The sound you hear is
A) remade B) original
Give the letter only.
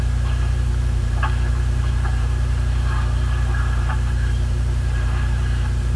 A